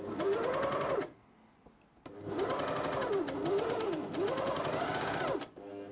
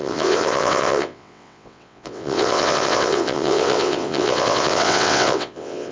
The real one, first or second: first